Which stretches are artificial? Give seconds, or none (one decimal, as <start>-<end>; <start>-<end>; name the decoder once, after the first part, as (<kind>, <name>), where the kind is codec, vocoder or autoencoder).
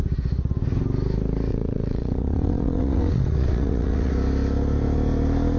1.5-4.1 (vocoder, WaveNeXt)